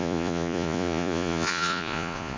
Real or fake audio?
fake